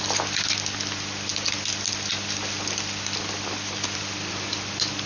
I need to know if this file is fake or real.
real